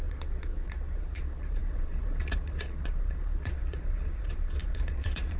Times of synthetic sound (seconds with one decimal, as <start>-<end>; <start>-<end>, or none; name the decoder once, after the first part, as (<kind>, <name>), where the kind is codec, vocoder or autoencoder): 0.0-5.4 (vocoder, Vocos)